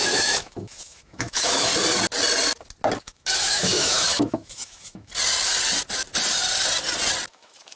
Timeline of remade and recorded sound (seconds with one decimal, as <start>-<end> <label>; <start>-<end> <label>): 0.0-1.7 remade; 1.7-3.0 recorded; 3.0-5.1 remade; 5.1-7.3 recorded; 7.3-7.8 remade